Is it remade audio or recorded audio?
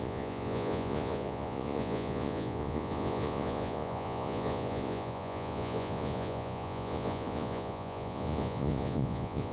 remade